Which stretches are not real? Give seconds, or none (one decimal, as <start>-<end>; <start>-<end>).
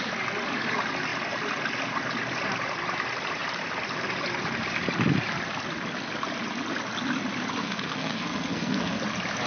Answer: 7.6-9.0